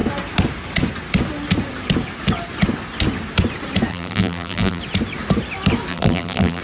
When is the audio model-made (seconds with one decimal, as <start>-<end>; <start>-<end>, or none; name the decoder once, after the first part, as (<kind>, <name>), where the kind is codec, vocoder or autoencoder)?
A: 3.9-4.8 (vocoder, BigVGAN v2); 5.9-6.6